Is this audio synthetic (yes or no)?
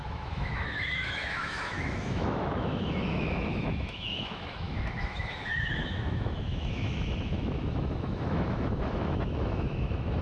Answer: yes